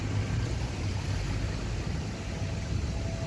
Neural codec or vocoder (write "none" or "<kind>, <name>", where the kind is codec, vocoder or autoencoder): none